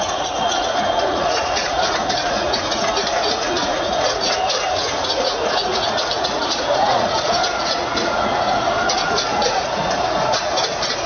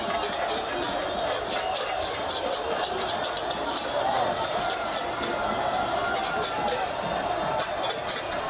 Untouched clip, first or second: second